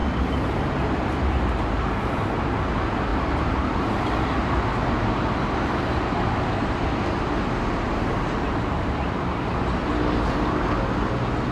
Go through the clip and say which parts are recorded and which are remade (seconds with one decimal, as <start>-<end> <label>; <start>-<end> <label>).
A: 0.0-3.1 recorded; 3.1-3.8 remade; 3.8-11.5 recorded